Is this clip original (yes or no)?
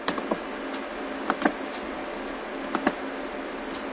yes